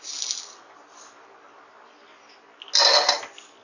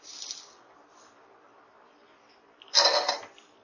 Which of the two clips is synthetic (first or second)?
second